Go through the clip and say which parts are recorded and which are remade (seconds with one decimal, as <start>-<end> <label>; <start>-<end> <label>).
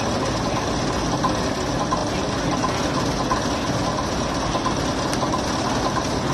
0.0-6.3 recorded